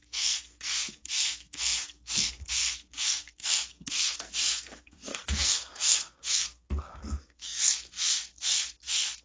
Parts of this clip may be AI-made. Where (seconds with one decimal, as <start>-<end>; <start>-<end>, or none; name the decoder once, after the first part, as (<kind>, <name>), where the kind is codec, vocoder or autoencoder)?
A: 0.0-9.2 (codec, SNAC)